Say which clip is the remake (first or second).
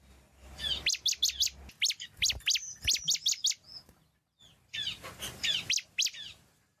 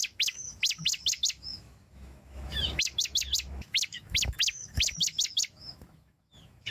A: second